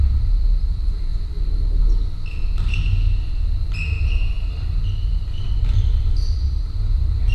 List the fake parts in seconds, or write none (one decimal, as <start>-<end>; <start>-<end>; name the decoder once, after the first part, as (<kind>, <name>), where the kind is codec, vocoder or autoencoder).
0.0-1.1 (vocoder, BigVGAN v2); 4.5-7.3